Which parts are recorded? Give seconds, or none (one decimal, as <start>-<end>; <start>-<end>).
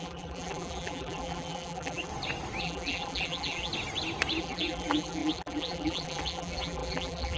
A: 2.1-2.6; 3.7-4.4